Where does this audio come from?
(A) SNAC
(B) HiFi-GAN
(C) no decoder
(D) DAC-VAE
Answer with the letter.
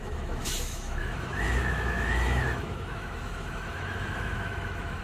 D